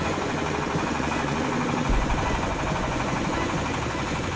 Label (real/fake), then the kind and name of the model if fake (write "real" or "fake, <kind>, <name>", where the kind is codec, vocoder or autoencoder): fake, vocoder, Vocos